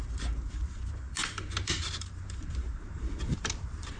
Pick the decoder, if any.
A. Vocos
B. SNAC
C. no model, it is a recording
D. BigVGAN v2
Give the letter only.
D